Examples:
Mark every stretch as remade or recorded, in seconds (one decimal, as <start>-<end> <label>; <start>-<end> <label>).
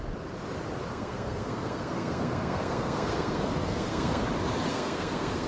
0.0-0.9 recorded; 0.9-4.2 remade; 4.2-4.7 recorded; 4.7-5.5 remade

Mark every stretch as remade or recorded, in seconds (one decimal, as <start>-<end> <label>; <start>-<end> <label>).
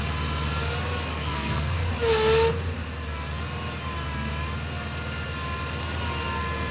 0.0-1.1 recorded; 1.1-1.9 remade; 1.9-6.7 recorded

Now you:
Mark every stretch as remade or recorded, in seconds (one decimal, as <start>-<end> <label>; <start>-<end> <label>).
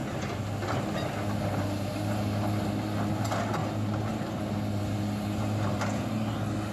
0.0-6.7 recorded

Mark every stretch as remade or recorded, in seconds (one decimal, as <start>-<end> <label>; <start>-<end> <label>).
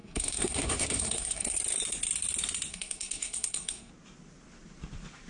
0.0-1.6 remade; 1.6-2.7 recorded; 2.7-3.9 remade; 3.9-5.3 recorded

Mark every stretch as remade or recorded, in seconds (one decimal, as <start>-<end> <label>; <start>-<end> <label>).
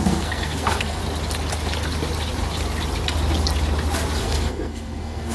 0.0-1.0 remade; 1.0-4.2 recorded; 4.2-5.3 remade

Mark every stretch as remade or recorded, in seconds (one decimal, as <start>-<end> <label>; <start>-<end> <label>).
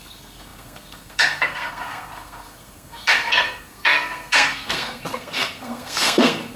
0.0-6.6 remade